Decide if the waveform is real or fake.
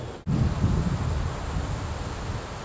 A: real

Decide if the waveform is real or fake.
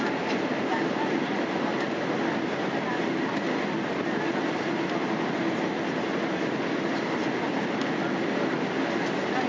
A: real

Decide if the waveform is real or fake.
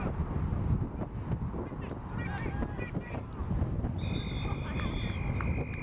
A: real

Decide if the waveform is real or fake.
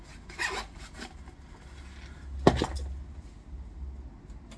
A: real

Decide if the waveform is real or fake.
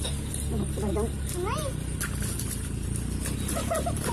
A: real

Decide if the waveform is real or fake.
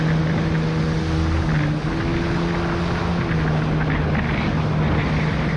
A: real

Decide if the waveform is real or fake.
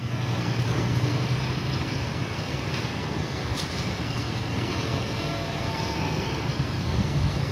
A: fake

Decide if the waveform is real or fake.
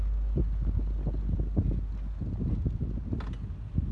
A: real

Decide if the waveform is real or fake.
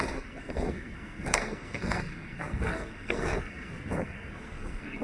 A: fake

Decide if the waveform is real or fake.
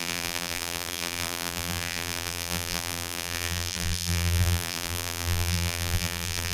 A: fake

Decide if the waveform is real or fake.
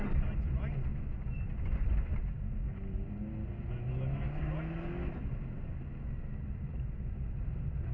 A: real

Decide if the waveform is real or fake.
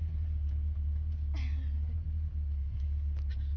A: real